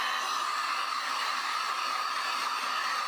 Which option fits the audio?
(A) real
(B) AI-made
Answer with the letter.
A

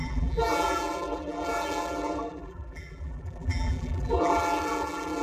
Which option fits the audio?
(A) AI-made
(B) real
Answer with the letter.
A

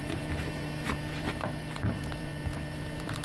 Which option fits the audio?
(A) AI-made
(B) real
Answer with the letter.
A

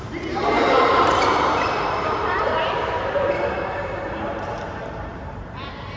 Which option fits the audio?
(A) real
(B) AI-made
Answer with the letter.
B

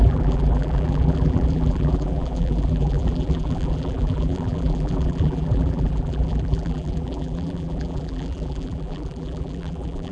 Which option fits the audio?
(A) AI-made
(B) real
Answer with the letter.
A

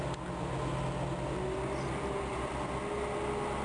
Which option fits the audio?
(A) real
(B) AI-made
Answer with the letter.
A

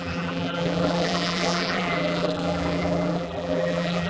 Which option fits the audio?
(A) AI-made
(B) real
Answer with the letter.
A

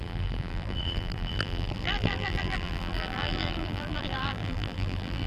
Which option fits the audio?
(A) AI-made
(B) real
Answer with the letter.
A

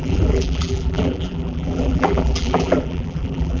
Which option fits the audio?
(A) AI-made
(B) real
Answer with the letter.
A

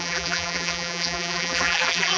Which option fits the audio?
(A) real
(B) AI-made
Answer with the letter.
B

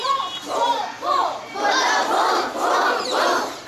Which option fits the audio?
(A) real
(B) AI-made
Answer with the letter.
B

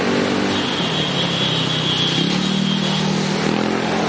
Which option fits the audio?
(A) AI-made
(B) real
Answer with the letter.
B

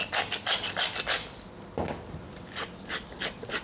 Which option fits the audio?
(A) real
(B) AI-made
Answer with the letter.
A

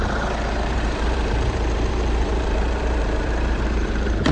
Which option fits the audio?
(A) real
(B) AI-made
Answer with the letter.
B